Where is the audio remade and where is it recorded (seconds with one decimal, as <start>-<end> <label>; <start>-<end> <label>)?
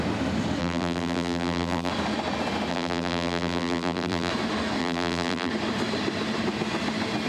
0.0-0.6 recorded; 0.6-1.9 remade; 1.9-2.7 recorded; 2.7-4.3 remade; 4.3-4.8 recorded; 4.8-5.5 remade; 5.5-7.3 recorded